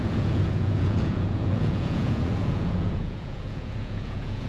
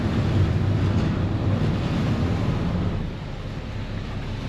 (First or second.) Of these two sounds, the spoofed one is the first